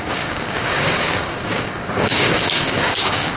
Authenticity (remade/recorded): remade